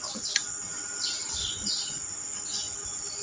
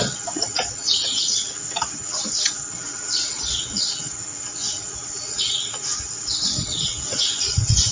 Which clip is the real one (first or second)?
first